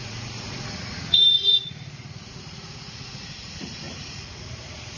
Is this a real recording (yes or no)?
no